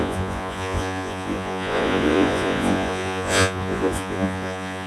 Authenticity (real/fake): fake